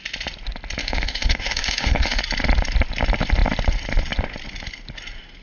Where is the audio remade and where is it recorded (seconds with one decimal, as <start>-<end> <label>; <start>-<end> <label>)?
0.0-0.8 recorded; 0.8-2.2 remade; 2.2-5.4 recorded